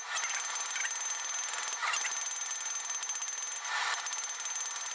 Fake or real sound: real